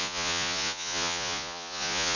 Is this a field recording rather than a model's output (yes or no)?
no